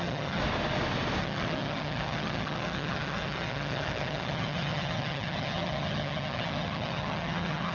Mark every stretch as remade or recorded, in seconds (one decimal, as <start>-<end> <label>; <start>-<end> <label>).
0.0-0.4 remade; 0.4-1.2 recorded; 1.2-7.7 remade

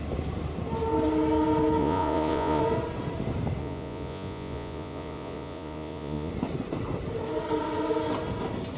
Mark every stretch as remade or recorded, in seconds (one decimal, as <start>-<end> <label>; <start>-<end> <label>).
0.0-1.8 recorded; 1.8-2.6 remade; 2.6-3.6 recorded; 3.6-6.3 remade; 6.3-8.8 recorded

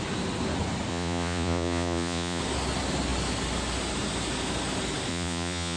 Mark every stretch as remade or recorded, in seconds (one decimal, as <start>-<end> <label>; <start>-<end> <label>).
0.0-0.9 recorded; 0.9-2.4 remade; 2.4-5.1 recorded; 5.1-5.8 remade

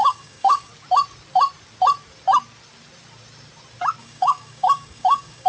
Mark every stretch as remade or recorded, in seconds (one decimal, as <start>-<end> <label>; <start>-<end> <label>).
0.0-0.7 remade; 0.7-4.0 recorded; 4.0-5.5 remade

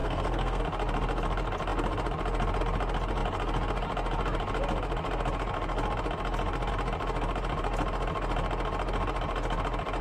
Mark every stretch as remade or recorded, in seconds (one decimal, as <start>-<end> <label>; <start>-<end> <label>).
0.0-0.6 remade; 0.6-10.0 recorded

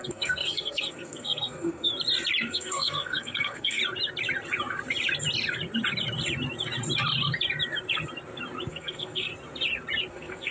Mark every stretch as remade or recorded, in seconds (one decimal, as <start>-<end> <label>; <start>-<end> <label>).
0.0-1.9 remade; 1.9-2.5 recorded; 2.5-3.8 remade; 3.8-8.7 recorded; 8.7-9.3 remade; 9.3-10.1 recorded; 10.1-10.5 remade

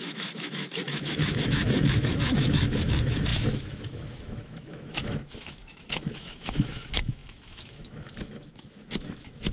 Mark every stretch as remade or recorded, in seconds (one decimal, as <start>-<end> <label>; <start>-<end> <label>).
0.0-9.5 remade

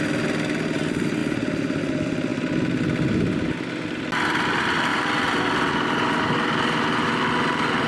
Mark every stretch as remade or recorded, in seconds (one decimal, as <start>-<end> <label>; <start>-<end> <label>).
0.0-7.9 recorded